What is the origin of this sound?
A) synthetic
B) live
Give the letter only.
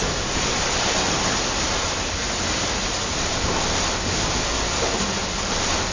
B